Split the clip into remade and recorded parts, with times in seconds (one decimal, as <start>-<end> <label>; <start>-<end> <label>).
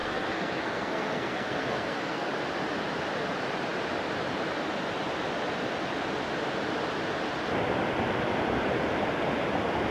0.0-2.3 remade; 2.3-9.9 recorded